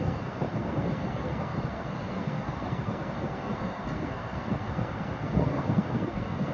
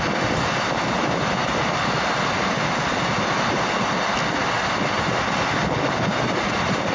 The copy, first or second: first